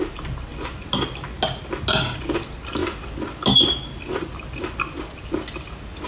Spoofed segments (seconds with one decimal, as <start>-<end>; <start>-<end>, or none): none